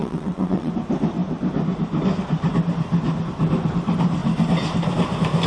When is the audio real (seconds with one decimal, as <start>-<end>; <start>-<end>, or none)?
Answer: 0.7-5.5